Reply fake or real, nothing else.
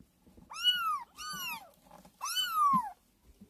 real